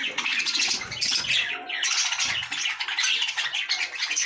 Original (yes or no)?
no